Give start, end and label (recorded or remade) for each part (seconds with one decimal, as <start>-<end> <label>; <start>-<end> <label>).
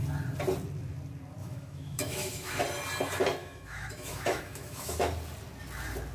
0.0-1.4 recorded; 1.4-2.6 remade; 2.6-3.4 recorded; 3.4-5.1 remade; 5.1-6.1 recorded